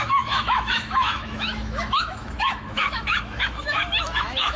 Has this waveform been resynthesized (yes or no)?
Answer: yes